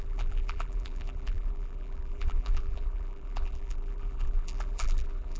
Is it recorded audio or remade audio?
remade